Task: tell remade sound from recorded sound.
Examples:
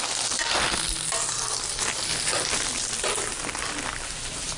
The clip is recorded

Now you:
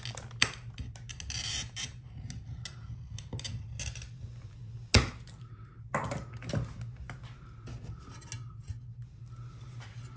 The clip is recorded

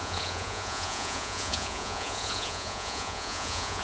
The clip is remade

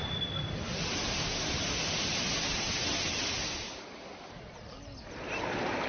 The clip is recorded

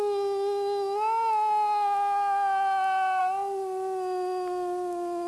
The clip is recorded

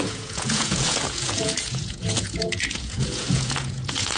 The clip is remade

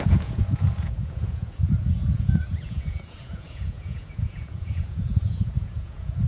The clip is remade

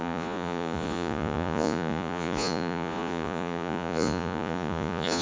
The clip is remade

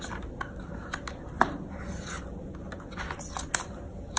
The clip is recorded